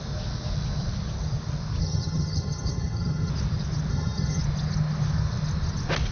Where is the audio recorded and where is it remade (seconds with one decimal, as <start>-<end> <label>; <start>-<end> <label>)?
0.0-1.8 recorded; 1.8-3.3 remade; 3.3-3.9 recorded; 3.9-4.4 remade; 4.4-6.1 recorded